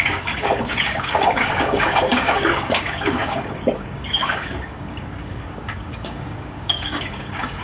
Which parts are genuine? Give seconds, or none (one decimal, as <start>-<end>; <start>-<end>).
none